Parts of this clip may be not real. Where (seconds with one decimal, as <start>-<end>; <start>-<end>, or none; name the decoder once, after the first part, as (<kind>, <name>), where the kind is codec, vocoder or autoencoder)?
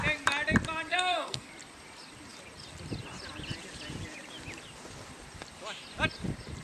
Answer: 0.9-1.5 (codec, SNAC)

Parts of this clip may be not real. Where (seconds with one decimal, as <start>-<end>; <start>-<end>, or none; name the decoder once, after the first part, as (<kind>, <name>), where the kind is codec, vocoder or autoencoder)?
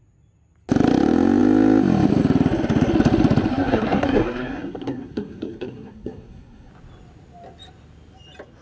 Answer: 3.5-6.7 (codec, SNAC)